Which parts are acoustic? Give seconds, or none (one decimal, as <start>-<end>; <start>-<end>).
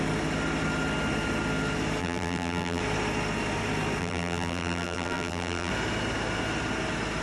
0.0-2.0; 2.8-4.0; 5.7-7.2